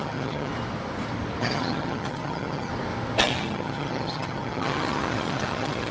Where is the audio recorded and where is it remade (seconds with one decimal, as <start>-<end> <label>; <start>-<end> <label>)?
0.0-0.5 remade; 0.5-1.4 recorded; 1.4-2.7 remade; 2.7-3.2 recorded; 3.2-5.9 remade